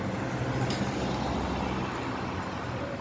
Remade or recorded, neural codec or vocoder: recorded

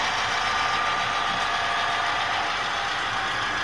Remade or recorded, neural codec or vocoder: recorded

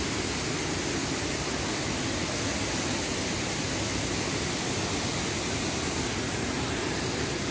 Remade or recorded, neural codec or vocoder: recorded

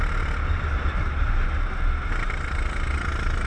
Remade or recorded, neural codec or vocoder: recorded